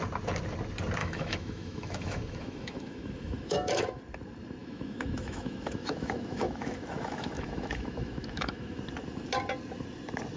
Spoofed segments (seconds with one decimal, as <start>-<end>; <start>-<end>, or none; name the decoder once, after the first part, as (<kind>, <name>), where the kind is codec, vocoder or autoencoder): 1.0-4.0 (autoencoder, DAC-VAE); 4.6-8.8